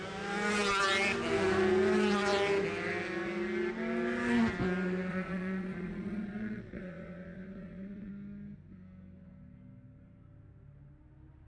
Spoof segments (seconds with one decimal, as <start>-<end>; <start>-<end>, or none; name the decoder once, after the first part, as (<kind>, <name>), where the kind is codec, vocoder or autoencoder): 5.1-8.1 (vocoder, Vocos)

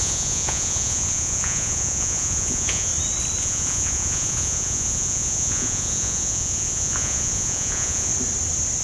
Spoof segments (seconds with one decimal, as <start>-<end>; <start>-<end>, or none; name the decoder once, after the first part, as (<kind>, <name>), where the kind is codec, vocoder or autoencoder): 0.0-2.9 (vocoder, Vocos); 3.4-8.1

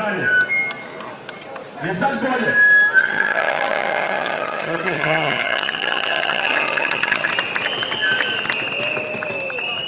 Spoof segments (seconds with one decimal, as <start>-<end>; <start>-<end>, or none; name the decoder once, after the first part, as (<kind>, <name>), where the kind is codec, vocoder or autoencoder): 3.0-7.3 (vocoder, HiFi-GAN)

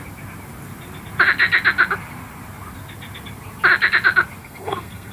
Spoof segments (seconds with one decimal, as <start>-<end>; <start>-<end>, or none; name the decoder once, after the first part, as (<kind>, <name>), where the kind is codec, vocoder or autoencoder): 4.4-5.1 (codec, SNAC)

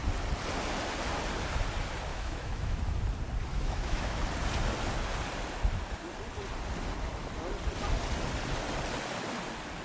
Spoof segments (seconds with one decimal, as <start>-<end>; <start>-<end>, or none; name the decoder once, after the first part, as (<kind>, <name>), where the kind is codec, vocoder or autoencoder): 2.1-2.8 (autoencoder, DAC-VAE); 3.5-4.2

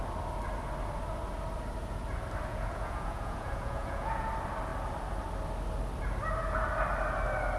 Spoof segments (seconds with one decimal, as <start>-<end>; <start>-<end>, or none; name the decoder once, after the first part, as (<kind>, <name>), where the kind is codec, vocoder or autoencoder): 2.5-4.3 (vocoder, Vocos)